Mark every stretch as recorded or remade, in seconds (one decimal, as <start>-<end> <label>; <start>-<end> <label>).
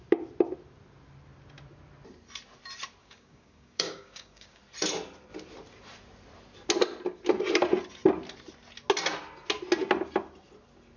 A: 0.0-3.0 recorded; 3.0-4.6 remade; 4.6-11.0 recorded